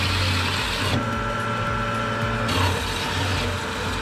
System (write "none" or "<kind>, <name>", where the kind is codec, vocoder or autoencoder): none